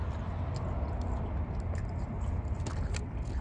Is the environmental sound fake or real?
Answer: real